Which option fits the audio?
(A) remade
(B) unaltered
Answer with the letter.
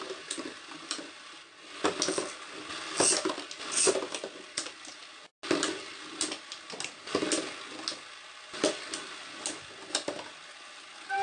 B